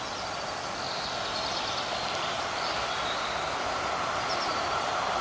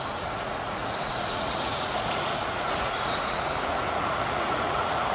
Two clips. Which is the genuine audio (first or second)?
first